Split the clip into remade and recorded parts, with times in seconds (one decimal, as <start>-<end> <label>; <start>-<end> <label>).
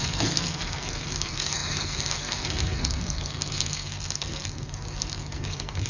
0.0-5.9 remade